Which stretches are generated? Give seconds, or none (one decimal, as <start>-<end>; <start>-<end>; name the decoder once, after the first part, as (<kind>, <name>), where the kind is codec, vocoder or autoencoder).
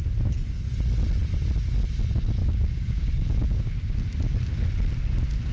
2.4-4.0 (codec, DAC)